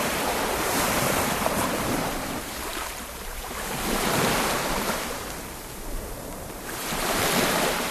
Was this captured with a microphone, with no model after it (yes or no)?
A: no